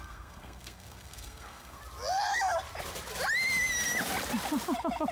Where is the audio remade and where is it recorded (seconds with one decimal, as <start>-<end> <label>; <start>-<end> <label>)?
0.0-1.8 remade; 1.8-5.1 recorded